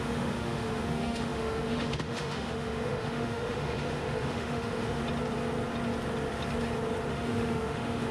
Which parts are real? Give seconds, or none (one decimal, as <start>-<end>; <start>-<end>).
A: 5.0-7.1

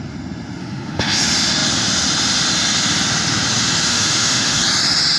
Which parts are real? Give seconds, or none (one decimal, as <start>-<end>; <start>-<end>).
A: 0.0-0.6; 1.2-3.9; 4.6-5.2

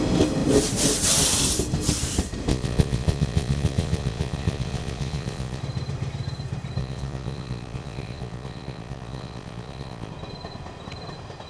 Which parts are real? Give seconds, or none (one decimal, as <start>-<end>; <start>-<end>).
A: 0.0-2.5; 5.6-6.8; 10.1-11.5

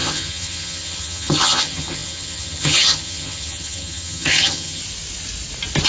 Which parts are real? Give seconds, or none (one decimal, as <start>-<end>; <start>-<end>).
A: 4.8-5.9

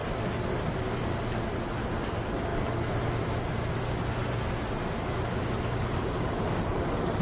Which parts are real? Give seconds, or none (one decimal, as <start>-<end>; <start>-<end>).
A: 0.9-5.8

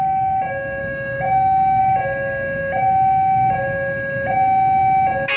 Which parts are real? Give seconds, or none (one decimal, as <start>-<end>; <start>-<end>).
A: 0.0-0.8; 1.8-5.4

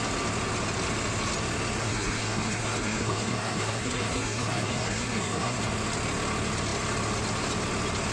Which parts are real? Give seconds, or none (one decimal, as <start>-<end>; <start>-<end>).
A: 0.0-1.8; 5.6-8.1